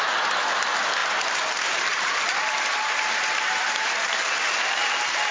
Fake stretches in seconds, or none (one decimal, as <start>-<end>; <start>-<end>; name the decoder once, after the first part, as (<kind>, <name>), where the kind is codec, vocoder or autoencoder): 1.0-4.2 (vocoder, BigVGAN v2)